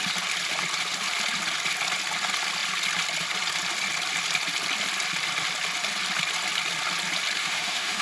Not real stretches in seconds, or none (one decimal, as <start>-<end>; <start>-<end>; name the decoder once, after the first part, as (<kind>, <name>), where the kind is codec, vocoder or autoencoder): 7.4-8.0 (autoencoder, DAC-VAE)